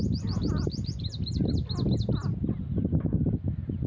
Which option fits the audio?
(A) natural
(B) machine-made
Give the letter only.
A